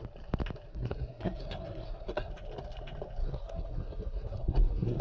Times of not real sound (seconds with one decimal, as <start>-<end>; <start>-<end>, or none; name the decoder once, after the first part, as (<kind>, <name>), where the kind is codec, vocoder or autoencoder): 0.7-2.3 (codec, SNAC); 3.2-5.0